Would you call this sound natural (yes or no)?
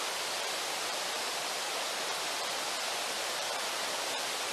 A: no